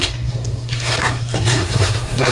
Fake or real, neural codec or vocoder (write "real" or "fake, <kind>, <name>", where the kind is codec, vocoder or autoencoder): fake, codec, SNAC